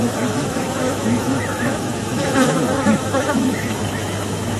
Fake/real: fake